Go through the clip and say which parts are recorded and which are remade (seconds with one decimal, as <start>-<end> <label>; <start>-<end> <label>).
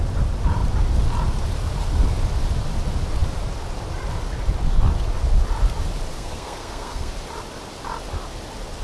0.0-6.1 recorded; 6.1-7.1 remade; 7.1-8.8 recorded